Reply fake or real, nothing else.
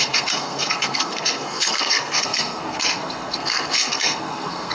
fake